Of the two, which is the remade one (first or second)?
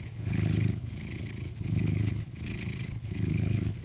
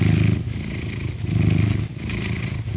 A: first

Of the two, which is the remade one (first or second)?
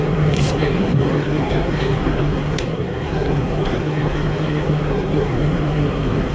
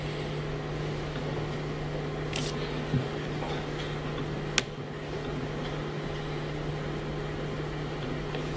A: first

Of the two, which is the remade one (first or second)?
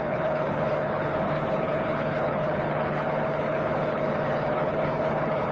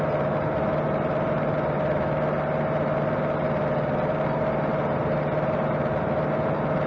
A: first